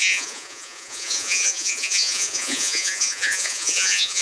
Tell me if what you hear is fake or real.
fake